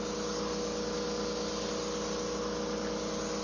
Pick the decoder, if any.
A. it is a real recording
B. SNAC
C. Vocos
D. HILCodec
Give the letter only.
A